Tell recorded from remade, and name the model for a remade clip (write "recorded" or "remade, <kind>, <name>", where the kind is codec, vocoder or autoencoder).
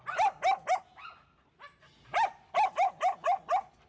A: recorded